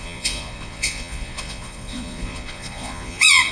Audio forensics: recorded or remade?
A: remade